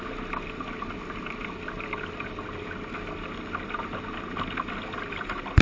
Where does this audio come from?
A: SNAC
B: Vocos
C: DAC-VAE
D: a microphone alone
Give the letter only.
D